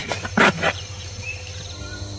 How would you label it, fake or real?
fake